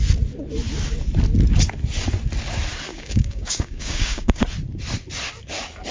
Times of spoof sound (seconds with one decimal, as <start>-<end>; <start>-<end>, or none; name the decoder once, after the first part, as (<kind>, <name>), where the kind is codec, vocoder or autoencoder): 2.9-4.4 (codec, DAC)